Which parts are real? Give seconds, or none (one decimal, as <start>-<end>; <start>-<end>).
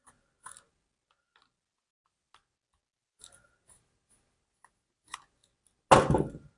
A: 0.0-6.6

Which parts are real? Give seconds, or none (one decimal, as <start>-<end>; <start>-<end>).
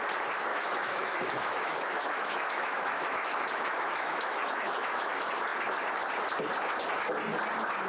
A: 0.0-0.5; 5.1-7.9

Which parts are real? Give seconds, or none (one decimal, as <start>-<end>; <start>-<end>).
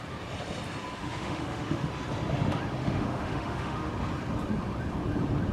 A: 0.0-1.0; 1.9-2.8; 3.9-5.5